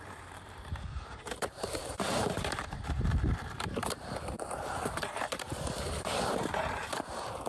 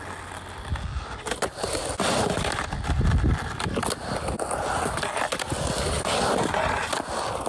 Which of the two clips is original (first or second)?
second